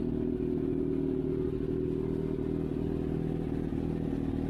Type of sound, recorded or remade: recorded